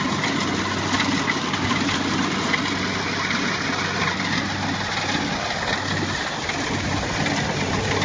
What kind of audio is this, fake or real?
real